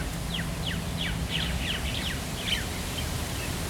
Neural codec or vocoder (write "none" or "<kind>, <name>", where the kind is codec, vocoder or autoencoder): none